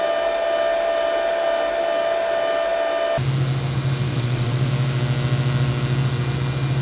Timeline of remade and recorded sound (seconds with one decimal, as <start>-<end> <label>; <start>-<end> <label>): 0.0-4.1 recorded; 4.1-4.7 remade; 4.7-6.8 recorded